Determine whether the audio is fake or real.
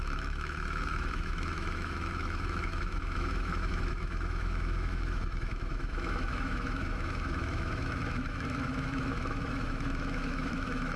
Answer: fake